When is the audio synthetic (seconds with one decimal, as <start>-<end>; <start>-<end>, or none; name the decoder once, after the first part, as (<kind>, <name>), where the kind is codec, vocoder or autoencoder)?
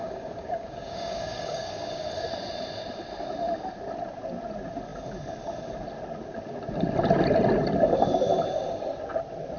0.0-2.1 (codec, DAC)